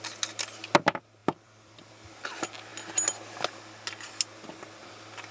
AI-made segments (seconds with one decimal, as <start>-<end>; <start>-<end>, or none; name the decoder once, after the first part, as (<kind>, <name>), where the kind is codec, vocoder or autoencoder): 1.2-1.9 (vocoder, BigVGAN v2)